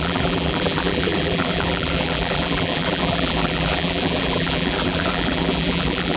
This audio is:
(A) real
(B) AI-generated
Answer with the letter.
B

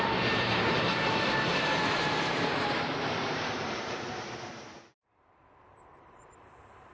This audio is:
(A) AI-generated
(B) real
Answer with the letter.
A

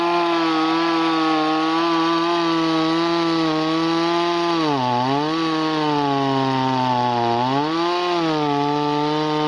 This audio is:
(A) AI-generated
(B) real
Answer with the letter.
B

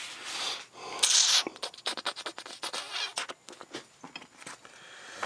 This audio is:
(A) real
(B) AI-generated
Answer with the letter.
A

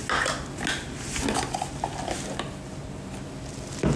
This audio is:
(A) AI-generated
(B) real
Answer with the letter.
B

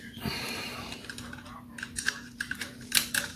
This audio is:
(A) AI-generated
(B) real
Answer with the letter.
A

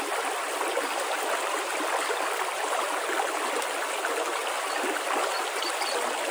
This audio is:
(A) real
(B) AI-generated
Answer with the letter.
A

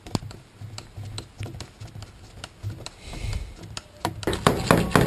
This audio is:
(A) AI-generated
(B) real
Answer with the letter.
B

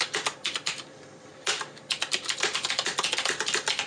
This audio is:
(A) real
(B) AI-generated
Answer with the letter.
B